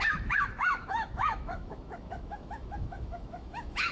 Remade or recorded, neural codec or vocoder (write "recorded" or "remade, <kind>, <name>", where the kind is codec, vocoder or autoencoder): remade, autoencoder, DAC-VAE